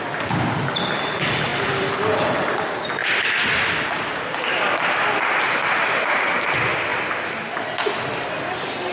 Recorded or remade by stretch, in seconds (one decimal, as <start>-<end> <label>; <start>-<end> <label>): 0.0-8.9 recorded